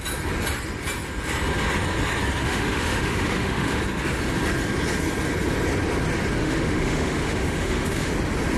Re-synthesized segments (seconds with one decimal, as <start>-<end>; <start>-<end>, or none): 2.4-3.8; 6.4-8.1